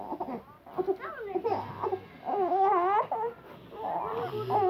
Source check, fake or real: real